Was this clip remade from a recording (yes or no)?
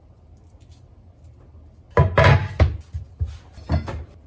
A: no